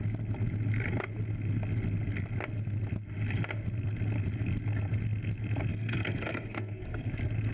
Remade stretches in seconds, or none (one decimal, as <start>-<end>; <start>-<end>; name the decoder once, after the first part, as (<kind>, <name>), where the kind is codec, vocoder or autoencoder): 5.7-7.1 (codec, SNAC)